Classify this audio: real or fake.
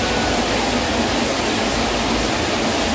real